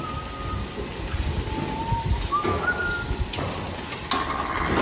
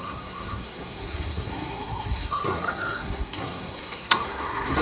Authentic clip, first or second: first